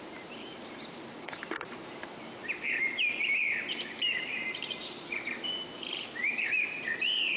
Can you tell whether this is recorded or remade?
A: remade